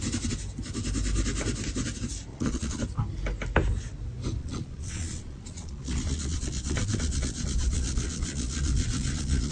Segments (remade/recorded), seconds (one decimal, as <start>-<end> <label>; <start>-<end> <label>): 0.0-2.3 recorded; 2.3-2.8 remade; 2.8-4.4 recorded; 4.4-9.5 remade